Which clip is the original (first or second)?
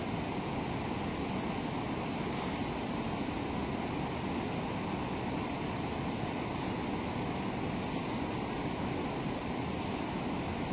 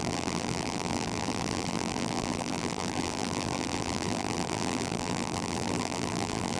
first